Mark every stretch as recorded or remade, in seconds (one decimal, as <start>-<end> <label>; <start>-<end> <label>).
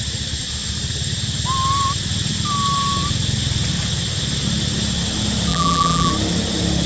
0.0-5.5 recorded; 5.5-6.1 remade; 6.1-6.9 recorded